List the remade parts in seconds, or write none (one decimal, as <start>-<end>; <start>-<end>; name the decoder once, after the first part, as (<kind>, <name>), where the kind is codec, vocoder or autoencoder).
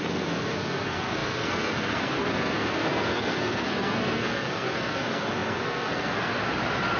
0.0-6.4 (codec, SNAC)